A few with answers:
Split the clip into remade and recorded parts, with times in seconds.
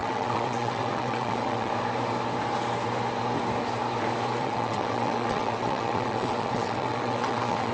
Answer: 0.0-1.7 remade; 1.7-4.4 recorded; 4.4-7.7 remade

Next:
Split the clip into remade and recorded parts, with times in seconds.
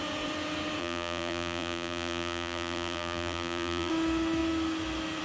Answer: 0.0-0.8 recorded; 0.8-3.9 remade; 3.9-5.2 recorded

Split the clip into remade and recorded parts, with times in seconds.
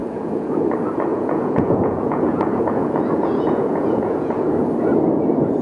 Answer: 0.0-0.6 remade; 0.6-1.1 recorded; 1.1-4.5 remade; 4.5-5.6 recorded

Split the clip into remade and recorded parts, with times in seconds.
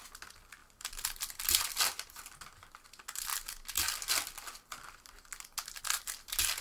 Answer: 0.0-6.6 recorded